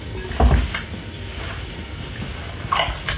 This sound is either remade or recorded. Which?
recorded